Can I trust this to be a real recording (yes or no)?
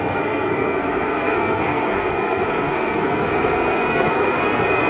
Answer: no